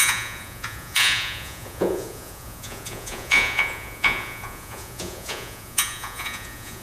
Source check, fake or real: fake